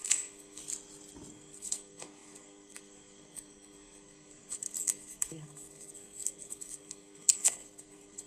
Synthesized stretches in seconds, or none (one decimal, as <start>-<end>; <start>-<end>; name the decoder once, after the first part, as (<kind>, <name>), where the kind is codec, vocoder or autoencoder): 0.0-0.6 (codec, SNAC); 1.3-8.3